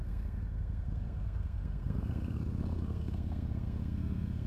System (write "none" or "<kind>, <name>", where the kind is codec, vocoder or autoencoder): codec, SNAC